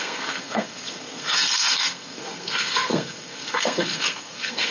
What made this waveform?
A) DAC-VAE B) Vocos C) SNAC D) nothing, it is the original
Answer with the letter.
C